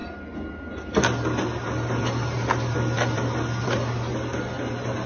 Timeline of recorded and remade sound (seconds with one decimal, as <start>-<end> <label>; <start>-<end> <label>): 0.0-5.1 recorded